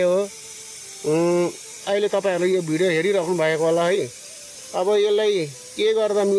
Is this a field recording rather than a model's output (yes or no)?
yes